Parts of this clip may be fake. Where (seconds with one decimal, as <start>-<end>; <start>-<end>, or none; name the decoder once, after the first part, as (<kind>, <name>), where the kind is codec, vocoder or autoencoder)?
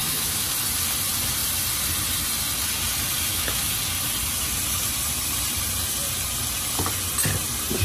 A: 0.0-0.5 (autoencoder, DAC-VAE); 3.3-3.8